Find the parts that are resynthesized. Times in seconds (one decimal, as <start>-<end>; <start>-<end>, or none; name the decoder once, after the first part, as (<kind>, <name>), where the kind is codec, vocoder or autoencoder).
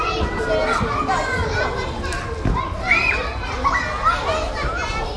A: none